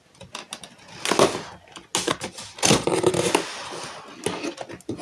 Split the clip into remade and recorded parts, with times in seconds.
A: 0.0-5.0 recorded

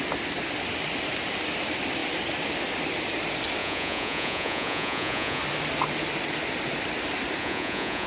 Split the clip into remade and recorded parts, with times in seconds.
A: 0.0-3.6 recorded; 3.6-5.4 remade; 5.4-7.4 recorded; 7.4-8.1 remade

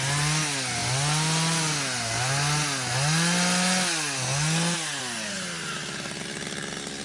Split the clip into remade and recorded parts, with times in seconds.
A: 0.0-7.0 recorded

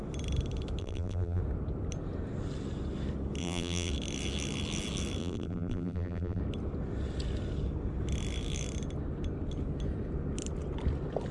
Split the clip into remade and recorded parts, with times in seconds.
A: 0.0-0.8 recorded; 0.8-1.4 remade; 1.4-3.4 recorded; 3.4-3.9 remade; 3.9-5.2 recorded; 5.2-6.4 remade; 6.4-11.3 recorded

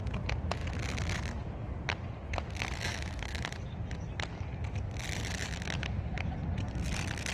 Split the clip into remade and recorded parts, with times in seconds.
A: 0.0-2.9 recorded; 2.9-3.4 remade; 3.4-7.3 recorded

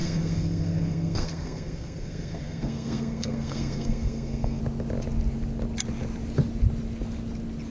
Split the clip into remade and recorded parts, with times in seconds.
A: 0.0-4.6 remade; 4.6-7.7 recorded